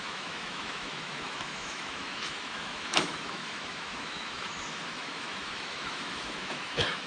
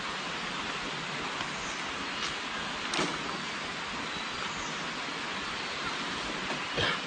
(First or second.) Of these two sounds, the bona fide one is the second